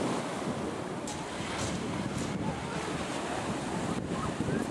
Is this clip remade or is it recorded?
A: remade